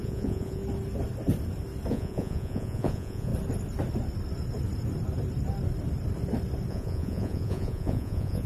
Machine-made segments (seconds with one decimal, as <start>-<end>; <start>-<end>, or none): 0.0-0.6; 1.9-3.3; 6.7-8.5